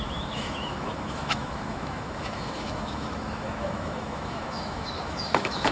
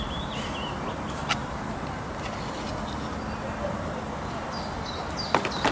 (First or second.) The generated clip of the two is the first